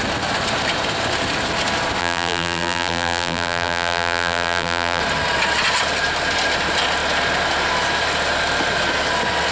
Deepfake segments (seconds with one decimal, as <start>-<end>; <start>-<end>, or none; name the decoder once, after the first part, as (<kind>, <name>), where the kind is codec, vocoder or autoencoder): 2.0-5.0 (vocoder, BigVGAN v2)